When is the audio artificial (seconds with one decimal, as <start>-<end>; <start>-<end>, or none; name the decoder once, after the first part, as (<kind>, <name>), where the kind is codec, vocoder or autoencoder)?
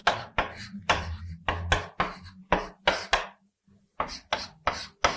0.0-1.2 (vocoder, BigVGAN v2)